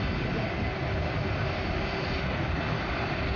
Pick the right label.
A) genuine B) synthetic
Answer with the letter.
A